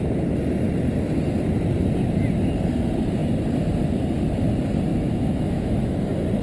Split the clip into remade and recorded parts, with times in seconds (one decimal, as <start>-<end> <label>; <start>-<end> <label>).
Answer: 0.0-4.9 recorded; 4.9-5.9 remade; 5.9-6.4 recorded